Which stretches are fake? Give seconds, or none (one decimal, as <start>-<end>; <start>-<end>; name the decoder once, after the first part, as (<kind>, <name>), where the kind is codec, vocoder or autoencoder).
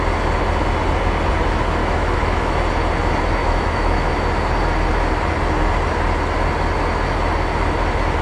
1.8-2.6 (autoencoder, DAC-VAE); 3.4-4.1